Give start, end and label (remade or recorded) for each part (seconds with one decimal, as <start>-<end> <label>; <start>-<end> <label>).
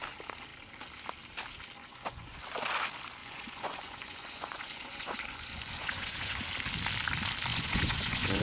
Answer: 0.0-1.8 recorded; 1.8-2.4 remade; 2.4-3.2 recorded; 3.2-6.4 remade; 6.4-7.5 recorded; 7.5-8.4 remade